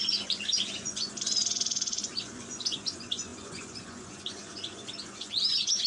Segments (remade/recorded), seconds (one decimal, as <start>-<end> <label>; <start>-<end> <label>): 0.0-5.9 remade